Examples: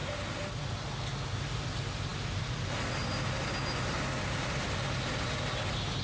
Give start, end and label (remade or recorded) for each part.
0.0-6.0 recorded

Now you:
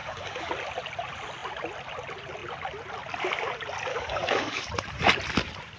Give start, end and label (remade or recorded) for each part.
0.0-0.5 remade; 0.5-3.9 recorded; 3.9-4.7 remade; 4.7-5.8 recorded